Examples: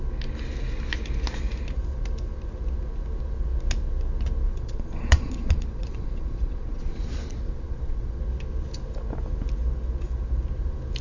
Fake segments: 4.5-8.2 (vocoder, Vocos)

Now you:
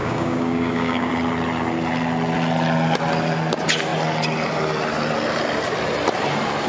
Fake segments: 0.0-1.1 (codec, DAC)

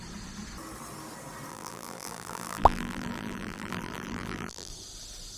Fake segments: 1.5-4.7 (vocoder, BigVGAN v2)

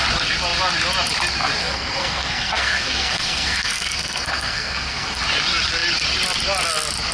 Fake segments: 1.6-5.2 (codec, SNAC)

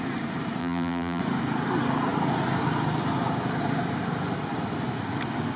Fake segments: 0.6-1.2 (vocoder, BigVGAN v2)

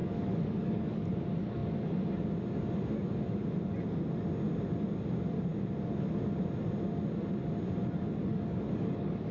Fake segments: 0.0-1.1 (codec, DAC); 8.2-9.3